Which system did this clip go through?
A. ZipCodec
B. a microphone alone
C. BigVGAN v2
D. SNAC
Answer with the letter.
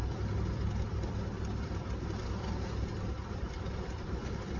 C